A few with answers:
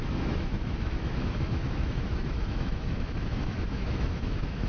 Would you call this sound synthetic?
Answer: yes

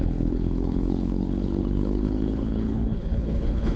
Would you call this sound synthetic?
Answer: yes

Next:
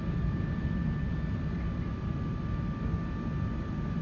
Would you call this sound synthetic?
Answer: no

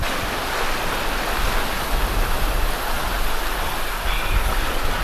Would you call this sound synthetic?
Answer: no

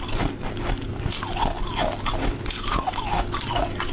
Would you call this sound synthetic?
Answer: no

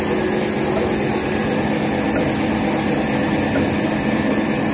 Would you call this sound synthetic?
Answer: no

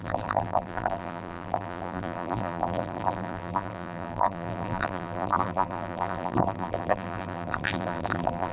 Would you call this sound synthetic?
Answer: yes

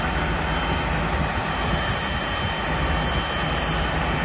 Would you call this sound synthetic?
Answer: no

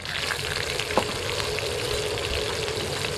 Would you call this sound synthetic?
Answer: no